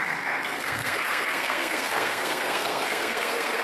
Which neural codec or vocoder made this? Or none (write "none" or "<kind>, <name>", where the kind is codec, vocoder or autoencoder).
codec, SNAC